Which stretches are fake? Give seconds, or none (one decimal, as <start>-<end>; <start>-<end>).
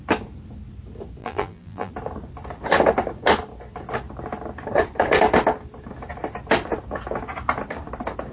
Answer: 1.2-1.9